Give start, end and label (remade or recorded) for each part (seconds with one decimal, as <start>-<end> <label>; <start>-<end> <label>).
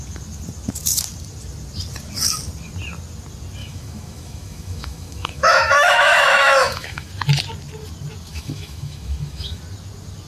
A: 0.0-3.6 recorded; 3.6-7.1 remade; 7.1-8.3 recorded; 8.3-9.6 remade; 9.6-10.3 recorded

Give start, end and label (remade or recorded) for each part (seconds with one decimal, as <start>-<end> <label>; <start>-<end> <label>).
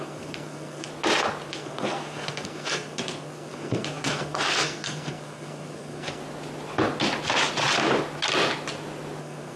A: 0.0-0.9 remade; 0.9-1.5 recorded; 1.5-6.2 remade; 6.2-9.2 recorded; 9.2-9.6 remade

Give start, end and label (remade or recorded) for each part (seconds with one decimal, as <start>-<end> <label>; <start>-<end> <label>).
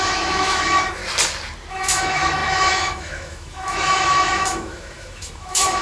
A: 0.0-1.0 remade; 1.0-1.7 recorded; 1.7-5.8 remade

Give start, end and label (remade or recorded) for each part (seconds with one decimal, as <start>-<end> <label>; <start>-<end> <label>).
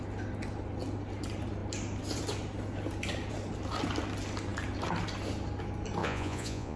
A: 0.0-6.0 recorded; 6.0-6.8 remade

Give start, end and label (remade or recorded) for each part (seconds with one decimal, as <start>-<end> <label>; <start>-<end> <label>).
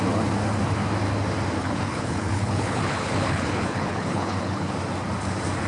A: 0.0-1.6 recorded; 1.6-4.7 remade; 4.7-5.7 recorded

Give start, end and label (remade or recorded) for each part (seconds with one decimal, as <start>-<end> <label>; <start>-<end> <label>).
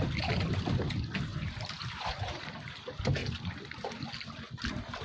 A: 0.0-1.3 recorded; 1.3-2.5 remade; 2.5-5.0 recorded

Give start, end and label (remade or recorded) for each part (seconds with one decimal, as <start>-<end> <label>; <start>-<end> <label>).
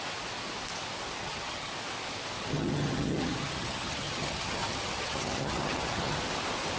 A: 0.0-1.2 recorded; 1.2-1.7 remade; 1.7-2.4 recorded; 2.4-6.2 remade; 6.2-6.8 recorded